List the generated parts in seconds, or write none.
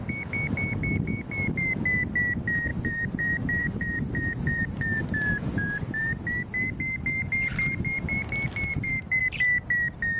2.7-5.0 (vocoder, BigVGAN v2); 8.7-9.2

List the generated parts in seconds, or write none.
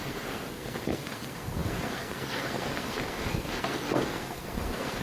0.0-5.0 (codec, SNAC)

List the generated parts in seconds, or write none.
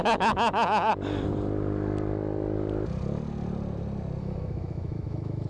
0.0-0.9 (autoencoder, DAC-VAE); 4.2-5.5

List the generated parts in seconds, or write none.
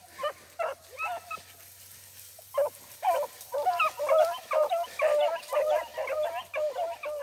none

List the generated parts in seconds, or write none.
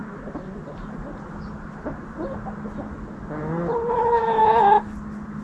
none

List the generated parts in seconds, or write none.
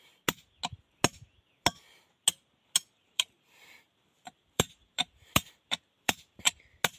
2.8-6.5 (vocoder, BigVGAN v2)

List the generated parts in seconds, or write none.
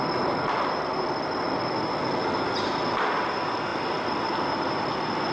3.7-4.7 (vocoder, BigVGAN v2)